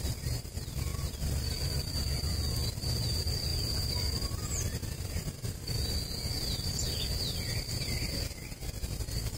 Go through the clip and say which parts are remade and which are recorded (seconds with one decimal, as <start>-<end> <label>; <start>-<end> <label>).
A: 0.0-9.4 recorded